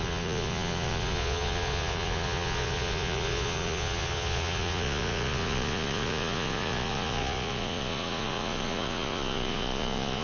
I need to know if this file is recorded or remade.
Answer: remade